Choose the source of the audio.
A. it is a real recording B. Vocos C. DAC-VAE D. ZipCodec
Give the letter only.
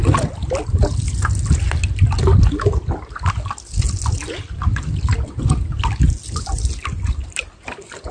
A